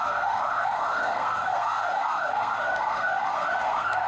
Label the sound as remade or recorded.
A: remade